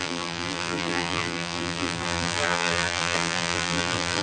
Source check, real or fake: fake